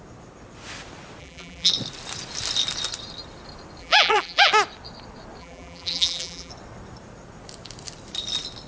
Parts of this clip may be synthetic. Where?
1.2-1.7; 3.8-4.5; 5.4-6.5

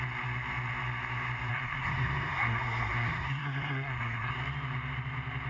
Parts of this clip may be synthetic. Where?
1.5-4.3

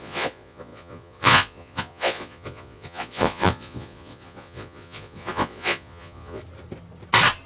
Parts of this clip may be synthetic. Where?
0.0-6.4